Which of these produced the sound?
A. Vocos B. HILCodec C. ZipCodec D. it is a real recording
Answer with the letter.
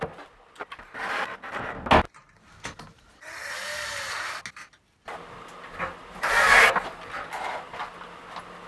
D